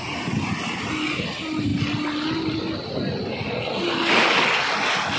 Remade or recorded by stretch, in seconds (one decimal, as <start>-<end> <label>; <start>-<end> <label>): 0.0-5.2 recorded